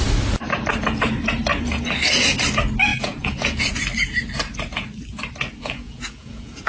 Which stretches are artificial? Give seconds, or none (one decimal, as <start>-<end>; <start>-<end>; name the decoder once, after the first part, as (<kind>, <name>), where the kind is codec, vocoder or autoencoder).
2.9-3.7 (vocoder, Vocos); 5.6-6.7